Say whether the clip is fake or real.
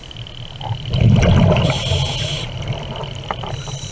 real